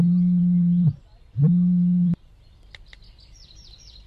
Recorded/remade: remade